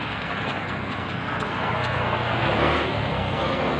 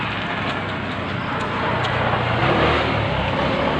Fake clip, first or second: first